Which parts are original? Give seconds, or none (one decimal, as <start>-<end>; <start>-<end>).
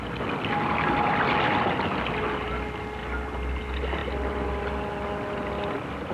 0.0-6.1